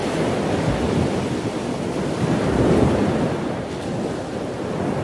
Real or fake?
real